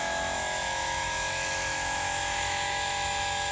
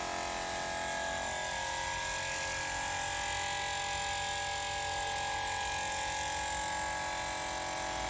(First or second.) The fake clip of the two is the first